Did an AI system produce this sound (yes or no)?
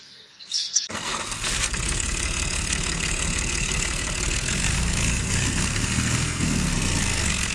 yes